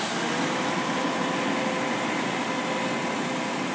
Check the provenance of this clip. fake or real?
real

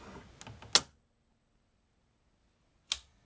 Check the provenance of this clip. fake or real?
real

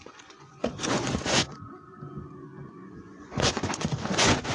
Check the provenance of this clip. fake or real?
fake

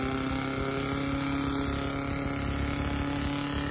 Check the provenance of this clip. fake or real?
real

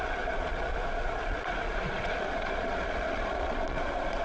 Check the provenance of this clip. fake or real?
fake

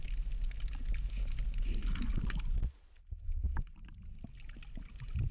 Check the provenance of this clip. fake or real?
real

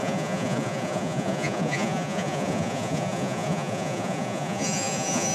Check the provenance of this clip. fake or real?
fake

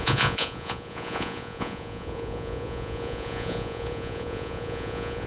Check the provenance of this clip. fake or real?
fake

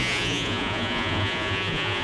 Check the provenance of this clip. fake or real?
fake